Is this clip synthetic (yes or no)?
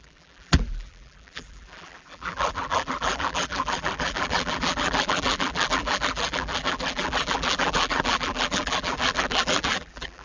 yes